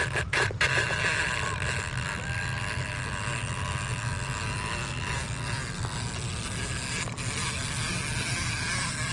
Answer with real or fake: real